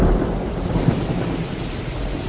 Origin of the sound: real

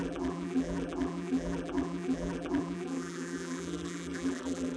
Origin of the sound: fake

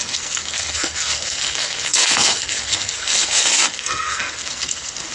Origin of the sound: fake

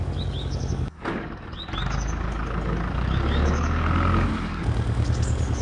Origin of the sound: fake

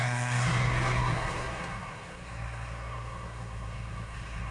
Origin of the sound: fake